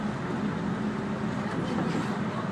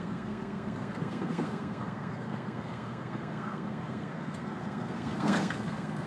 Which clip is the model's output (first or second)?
second